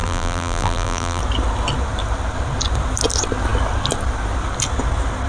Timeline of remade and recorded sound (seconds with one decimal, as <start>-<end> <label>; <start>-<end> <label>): 0.0-1.2 remade; 1.2-5.3 recorded